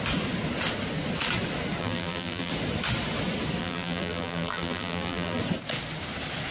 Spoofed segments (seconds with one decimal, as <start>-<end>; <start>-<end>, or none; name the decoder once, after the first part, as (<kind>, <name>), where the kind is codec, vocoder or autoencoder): 1.8-2.5 (vocoder, BigVGAN v2); 3.6-5.4